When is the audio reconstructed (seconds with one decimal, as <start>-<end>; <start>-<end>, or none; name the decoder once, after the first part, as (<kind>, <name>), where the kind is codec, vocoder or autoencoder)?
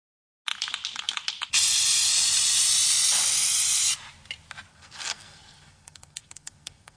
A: 4.7-7.0 (codec, SNAC)